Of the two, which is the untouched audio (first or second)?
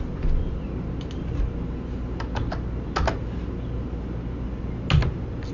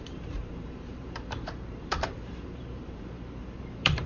first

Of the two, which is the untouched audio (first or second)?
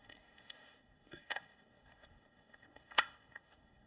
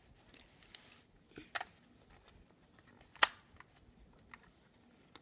second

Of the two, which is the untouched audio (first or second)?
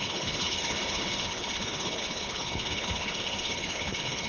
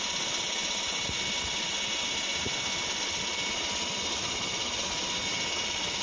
second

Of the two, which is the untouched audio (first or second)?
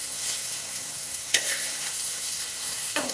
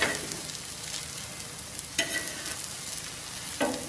second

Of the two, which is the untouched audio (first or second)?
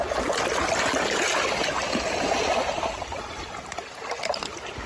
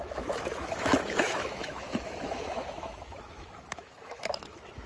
first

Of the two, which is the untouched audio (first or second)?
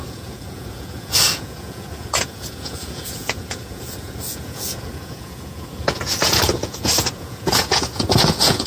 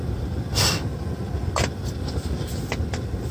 second